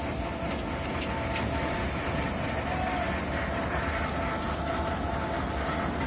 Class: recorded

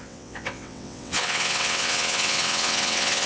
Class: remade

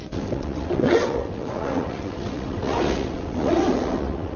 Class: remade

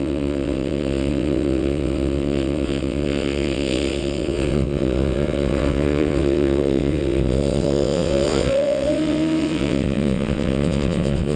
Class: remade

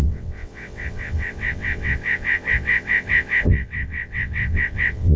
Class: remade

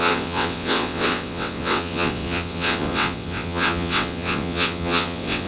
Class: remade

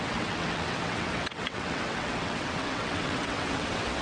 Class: remade